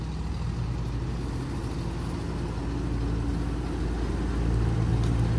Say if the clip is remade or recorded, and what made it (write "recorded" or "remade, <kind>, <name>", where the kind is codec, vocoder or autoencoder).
recorded